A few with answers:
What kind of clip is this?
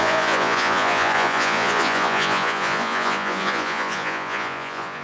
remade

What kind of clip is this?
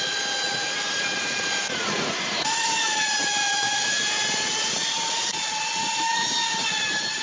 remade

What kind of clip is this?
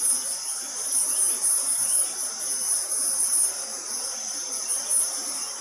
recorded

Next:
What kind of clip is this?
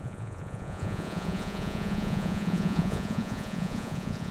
remade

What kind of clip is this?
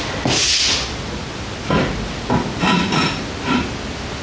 recorded